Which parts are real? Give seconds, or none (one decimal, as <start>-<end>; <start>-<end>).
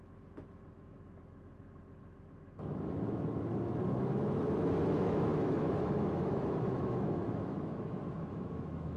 none